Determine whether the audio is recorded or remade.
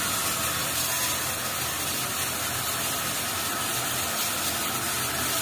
recorded